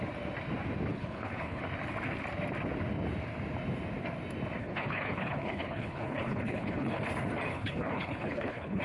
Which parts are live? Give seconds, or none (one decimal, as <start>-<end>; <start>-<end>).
0.0-0.9; 1.6-4.6; 7.0-7.5